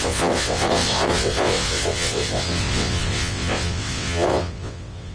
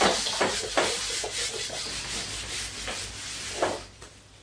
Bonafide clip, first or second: second